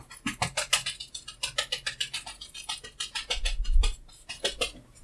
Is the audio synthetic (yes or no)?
no